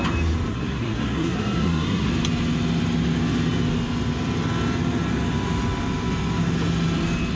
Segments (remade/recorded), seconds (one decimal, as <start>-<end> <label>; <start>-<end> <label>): 0.0-0.5 recorded; 0.5-2.1 remade; 2.1-7.4 recorded